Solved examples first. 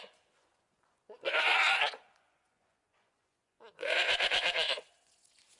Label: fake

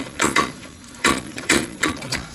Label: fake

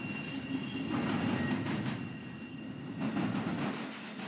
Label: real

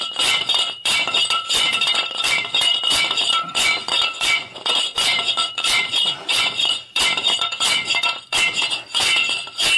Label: fake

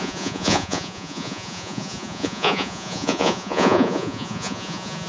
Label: fake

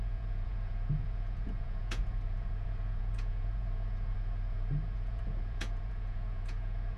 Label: fake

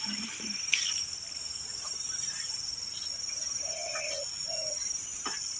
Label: real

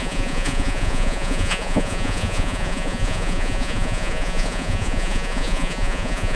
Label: fake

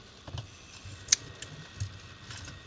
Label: real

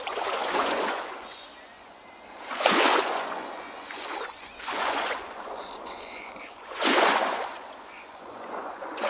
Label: fake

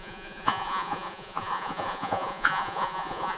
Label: fake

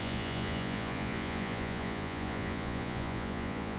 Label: fake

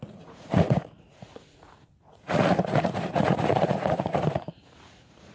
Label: fake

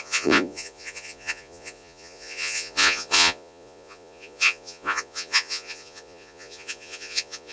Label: fake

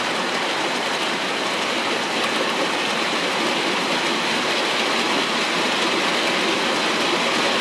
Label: real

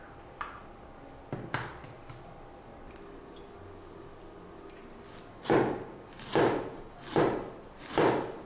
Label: real